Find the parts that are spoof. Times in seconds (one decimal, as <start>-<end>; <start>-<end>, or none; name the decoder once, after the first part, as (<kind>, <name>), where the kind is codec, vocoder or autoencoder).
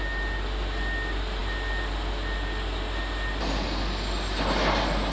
none